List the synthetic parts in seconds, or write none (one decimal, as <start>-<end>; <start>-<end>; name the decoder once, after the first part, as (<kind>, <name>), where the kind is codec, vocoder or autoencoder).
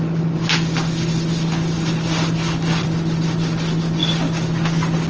none